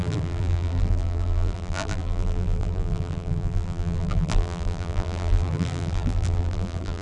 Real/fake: fake